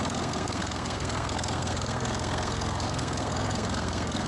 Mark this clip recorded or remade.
remade